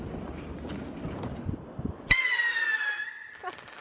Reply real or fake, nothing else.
real